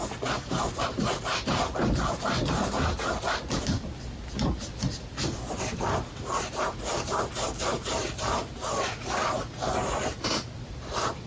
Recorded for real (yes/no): yes